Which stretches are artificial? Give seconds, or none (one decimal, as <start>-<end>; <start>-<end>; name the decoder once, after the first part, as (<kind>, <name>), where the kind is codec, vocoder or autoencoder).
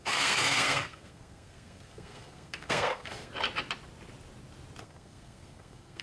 0.0-3.3 (codec, SNAC); 4.8-6.0